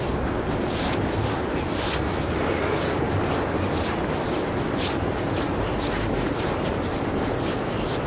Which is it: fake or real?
real